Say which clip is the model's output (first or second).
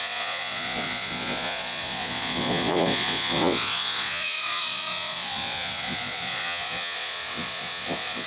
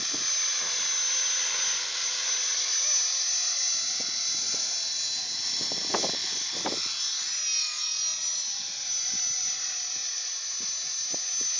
first